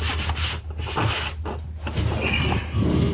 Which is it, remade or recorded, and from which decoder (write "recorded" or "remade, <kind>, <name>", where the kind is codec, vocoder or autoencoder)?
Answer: recorded